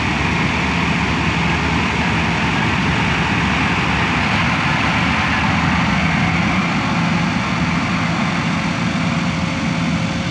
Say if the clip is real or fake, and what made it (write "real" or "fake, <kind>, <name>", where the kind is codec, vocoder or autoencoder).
real